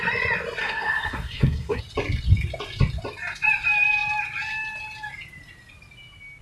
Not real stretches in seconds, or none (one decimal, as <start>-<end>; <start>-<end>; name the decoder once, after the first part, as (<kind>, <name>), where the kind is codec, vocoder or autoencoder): 0.6-1.8 (codec, SNAC)